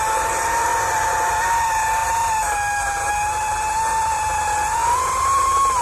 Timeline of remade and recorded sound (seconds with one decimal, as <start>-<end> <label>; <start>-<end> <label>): 0.0-0.7 recorded; 0.7-1.5 remade; 1.5-5.8 recorded